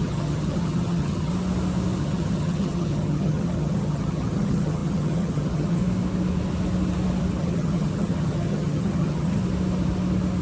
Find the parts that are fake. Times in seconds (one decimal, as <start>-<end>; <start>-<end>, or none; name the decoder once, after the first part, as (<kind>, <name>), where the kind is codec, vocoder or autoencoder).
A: 0.0-1.3 (vocoder, HiFi-GAN); 2.0-5.8; 7.4-9.4